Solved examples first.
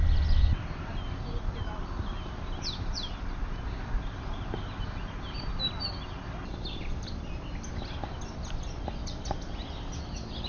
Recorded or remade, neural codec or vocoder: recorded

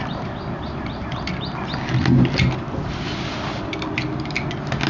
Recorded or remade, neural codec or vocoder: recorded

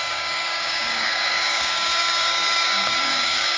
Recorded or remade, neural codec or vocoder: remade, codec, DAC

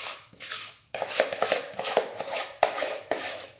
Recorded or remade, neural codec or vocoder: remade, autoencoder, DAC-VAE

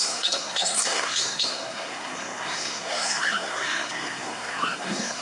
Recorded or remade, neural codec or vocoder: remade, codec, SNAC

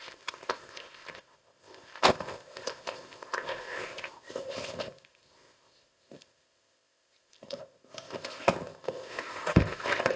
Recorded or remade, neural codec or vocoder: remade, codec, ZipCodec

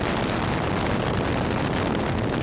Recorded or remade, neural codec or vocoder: recorded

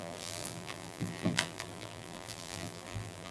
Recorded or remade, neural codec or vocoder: remade, vocoder, BigVGAN v2